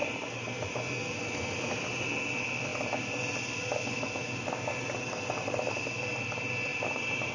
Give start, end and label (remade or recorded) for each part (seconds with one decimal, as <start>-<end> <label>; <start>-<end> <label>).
0.0-0.8 remade; 0.8-6.7 recorded; 6.7-7.3 remade